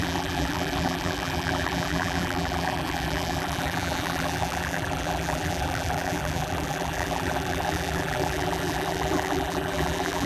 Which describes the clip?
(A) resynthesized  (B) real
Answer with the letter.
A